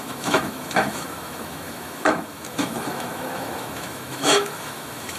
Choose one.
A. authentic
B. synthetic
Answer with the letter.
B